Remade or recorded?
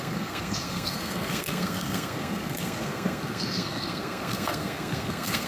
remade